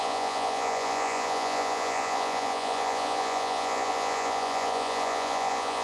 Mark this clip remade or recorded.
remade